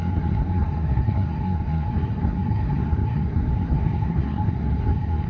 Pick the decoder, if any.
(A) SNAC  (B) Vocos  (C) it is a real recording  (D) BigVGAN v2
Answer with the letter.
A